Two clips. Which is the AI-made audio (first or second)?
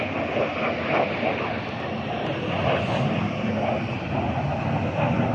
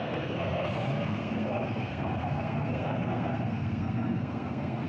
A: second